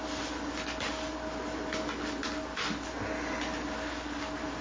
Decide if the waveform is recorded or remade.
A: recorded